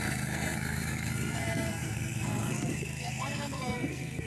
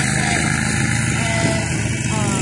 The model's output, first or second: first